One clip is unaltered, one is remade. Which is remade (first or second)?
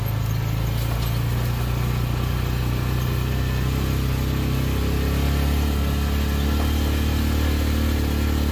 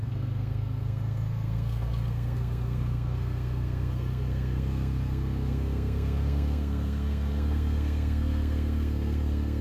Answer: second